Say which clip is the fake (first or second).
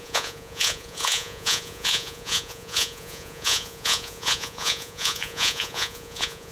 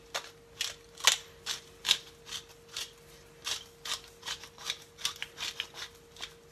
first